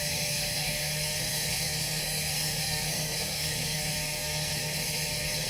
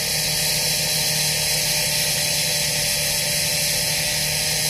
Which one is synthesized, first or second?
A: first